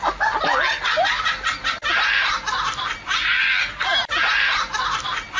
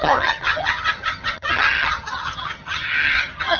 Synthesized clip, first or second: second